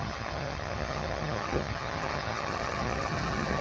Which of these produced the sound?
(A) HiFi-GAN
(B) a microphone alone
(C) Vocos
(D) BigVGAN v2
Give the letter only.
A